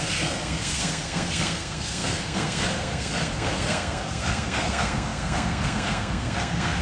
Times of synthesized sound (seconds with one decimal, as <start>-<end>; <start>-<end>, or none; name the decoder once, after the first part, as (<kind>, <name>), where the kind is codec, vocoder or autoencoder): 0.0-6.8 (codec, SNAC)